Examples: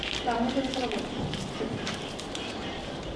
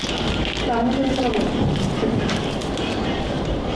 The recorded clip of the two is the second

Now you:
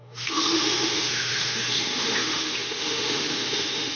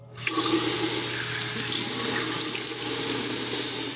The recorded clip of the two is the second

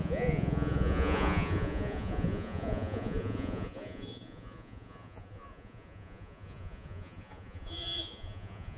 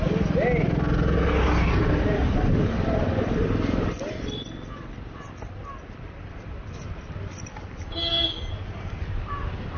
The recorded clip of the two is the second